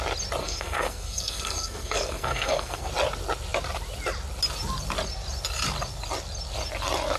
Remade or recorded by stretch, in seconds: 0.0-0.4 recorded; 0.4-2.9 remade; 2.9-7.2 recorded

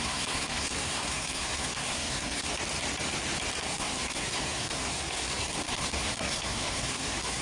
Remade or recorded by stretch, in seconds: 0.0-2.5 remade; 2.5-3.6 recorded; 3.6-7.4 remade

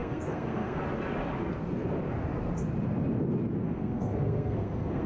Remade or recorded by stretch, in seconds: 0.0-0.8 remade; 0.8-3.6 recorded; 3.6-5.1 remade

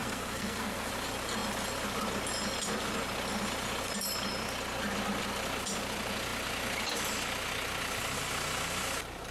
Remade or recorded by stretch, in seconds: 0.0-0.9 remade; 0.9-9.3 recorded

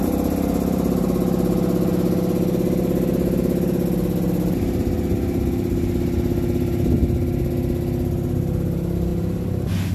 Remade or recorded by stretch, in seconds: 0.0-9.9 recorded

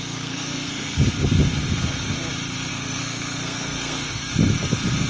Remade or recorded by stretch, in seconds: 0.0-1.0 remade; 1.0-2.7 recorded; 2.7-4.3 remade; 4.3-5.1 recorded